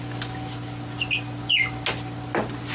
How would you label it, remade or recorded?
recorded